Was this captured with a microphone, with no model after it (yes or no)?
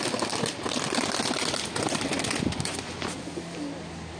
yes